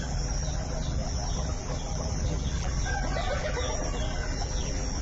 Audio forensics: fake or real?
fake